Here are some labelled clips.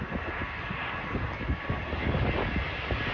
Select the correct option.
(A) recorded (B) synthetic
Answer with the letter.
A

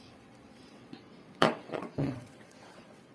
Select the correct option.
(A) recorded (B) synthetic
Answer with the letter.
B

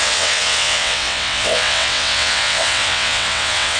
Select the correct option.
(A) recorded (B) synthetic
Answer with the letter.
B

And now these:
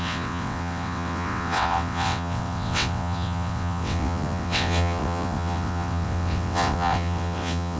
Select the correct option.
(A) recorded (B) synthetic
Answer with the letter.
B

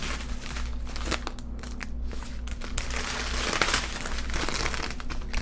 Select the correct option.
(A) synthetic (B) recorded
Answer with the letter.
B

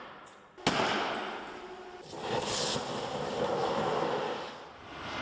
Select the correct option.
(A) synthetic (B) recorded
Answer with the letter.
B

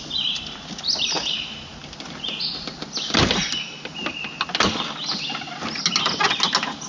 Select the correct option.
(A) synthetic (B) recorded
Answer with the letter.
B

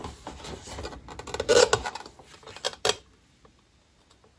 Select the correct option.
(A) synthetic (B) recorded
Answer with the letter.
B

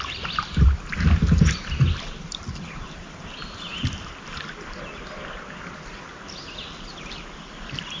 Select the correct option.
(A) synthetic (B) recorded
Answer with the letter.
B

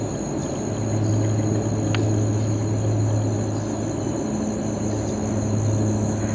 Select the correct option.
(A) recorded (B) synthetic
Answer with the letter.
A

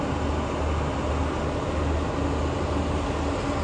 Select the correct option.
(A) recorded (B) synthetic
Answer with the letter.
A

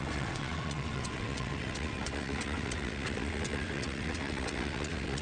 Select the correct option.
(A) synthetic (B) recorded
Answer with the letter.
A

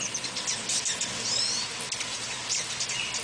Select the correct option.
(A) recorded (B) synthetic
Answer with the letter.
A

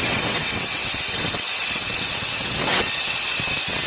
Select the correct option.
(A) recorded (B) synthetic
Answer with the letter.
B